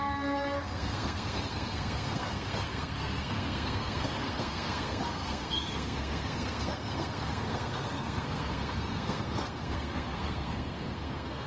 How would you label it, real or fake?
fake